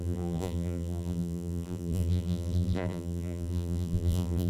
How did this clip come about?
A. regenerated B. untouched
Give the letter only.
A